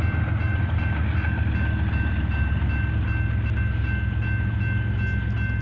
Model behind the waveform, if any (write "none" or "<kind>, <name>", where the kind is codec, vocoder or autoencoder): none